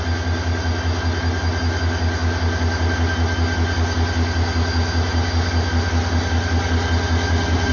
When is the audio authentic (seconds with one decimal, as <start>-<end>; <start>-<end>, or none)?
0.0-7.7